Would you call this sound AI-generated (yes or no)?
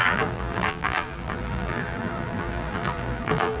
yes